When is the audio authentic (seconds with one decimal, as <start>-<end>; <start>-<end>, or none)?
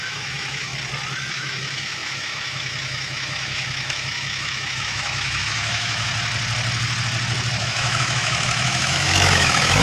0.7-1.3; 6.1-7.6